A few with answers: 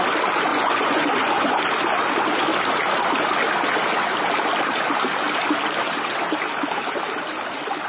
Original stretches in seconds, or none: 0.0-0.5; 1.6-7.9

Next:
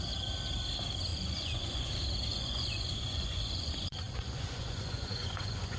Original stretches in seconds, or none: 0.0-1.1; 1.9-2.3

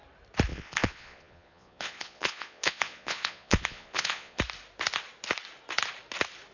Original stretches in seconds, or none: 0.0-0.5; 4.4-6.5